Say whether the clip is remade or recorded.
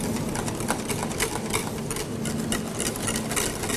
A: recorded